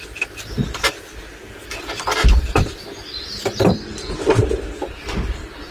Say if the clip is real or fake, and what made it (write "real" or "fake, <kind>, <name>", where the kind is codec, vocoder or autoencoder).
real